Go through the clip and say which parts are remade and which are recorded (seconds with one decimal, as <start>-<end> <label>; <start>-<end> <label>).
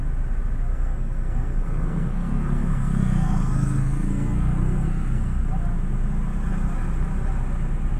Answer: 0.0-0.7 recorded; 0.7-5.5 remade; 5.5-8.0 recorded